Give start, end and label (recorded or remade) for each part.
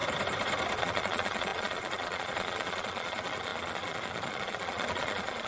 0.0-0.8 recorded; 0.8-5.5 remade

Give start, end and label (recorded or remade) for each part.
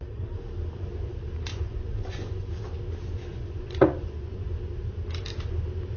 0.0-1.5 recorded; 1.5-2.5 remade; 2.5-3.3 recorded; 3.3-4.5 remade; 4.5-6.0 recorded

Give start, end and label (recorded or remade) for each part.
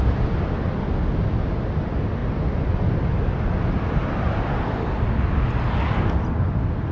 0.0-6.9 recorded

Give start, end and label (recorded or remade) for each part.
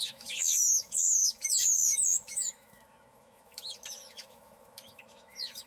0.0-5.7 remade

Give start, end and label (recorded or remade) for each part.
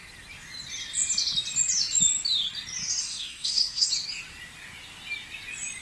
0.0-3.0 recorded; 3.0-3.9 remade; 3.9-5.8 recorded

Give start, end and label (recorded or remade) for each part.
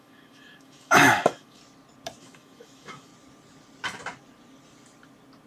0.0-1.6 remade; 1.6-2.2 recorded; 2.2-3.1 remade; 3.1-5.5 recorded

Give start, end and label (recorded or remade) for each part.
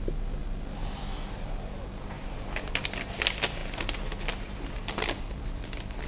0.0-6.1 recorded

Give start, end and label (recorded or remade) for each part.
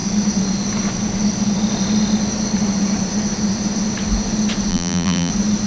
0.0-4.7 recorded; 4.7-5.3 remade; 5.3-5.7 recorded